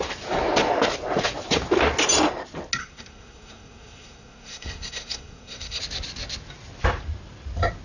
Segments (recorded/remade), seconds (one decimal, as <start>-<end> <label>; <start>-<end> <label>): 0.0-2.8 recorded; 2.8-5.8 remade; 5.8-7.8 recorded